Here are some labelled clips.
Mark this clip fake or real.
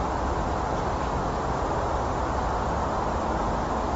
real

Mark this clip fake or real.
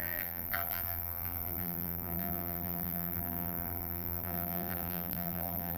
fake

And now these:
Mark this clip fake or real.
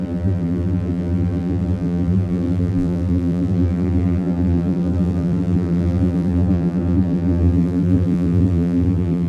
fake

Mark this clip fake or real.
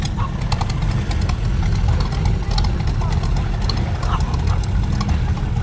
real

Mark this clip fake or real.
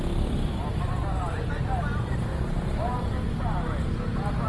real